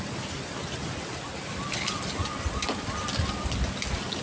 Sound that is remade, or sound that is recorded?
recorded